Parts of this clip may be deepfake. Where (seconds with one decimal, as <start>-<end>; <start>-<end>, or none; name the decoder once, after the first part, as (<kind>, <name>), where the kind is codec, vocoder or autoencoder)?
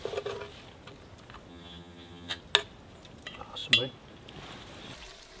1.5-2.4 (vocoder, HiFi-GAN)